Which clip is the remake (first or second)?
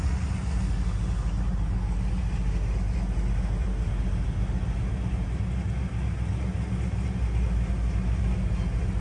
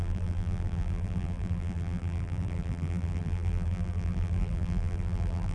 second